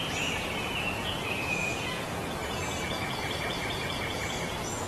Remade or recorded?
remade